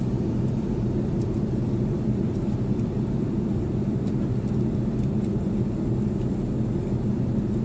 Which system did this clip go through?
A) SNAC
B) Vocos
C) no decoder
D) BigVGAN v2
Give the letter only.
C